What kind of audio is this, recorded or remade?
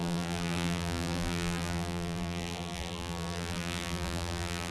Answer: remade